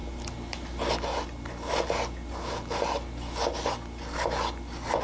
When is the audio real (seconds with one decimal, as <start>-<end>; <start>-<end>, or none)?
0.0-5.0